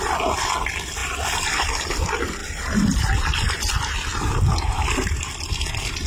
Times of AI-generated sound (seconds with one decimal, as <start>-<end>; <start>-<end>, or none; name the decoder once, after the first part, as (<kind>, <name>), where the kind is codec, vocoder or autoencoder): 1.0-1.9 (vocoder, BigVGAN v2); 2.4-3.3; 4.1-5.5